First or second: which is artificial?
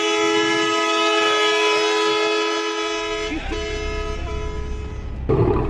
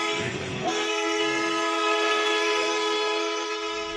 second